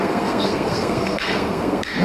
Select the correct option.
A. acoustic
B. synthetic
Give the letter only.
B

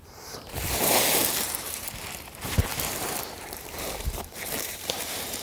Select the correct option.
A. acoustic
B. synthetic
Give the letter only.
B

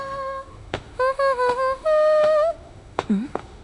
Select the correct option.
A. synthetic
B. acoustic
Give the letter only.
A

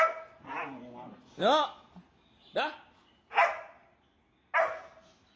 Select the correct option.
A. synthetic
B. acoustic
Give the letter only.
B